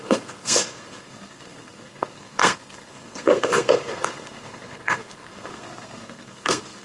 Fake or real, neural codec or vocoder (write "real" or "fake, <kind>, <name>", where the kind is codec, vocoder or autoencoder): fake, codec, SNAC